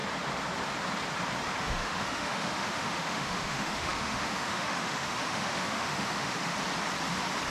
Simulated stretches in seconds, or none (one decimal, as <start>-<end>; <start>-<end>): 1.6-6.5